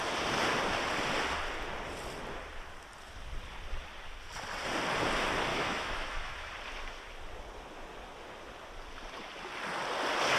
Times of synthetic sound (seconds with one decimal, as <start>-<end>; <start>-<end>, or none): 5.5-6.5